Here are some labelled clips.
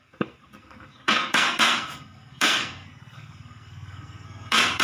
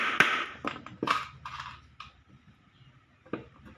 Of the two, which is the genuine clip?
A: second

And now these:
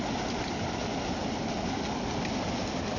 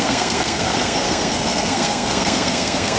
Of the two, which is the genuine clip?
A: first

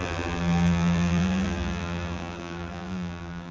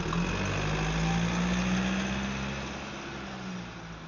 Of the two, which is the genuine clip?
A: second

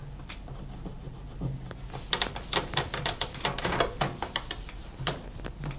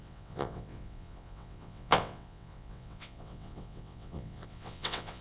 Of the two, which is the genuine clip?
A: first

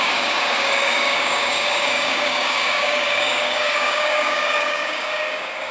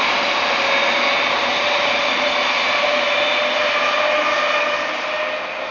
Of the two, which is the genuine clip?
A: second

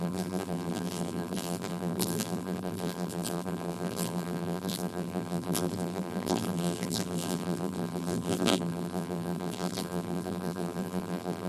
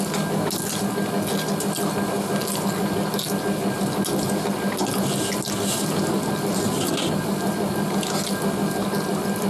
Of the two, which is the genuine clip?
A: second